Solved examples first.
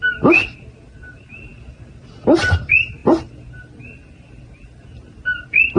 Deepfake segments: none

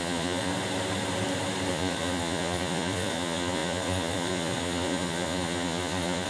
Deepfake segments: 0.0-0.5 (vocoder, Vocos); 1.7-6.3

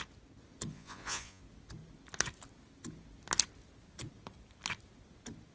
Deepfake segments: 0.7-1.4 (vocoder, Vocos)

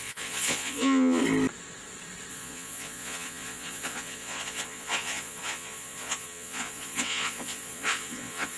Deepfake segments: 0.0-1.2 (vocoder, Vocos); 2.3-8.6

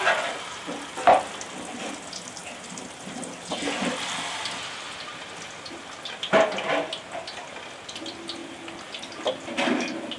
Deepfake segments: none

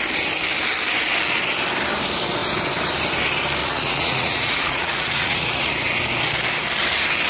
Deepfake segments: 3.6-5.7 (vocoder, Vocos)

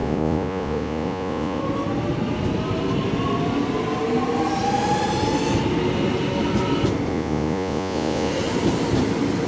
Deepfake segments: 0.0-1.6 (vocoder, Vocos); 7.1-8.3

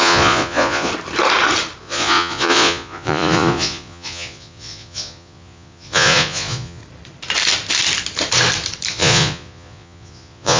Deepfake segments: 0.0-0.9 (vocoder, Vocos); 1.8-6.8; 8.9-10.6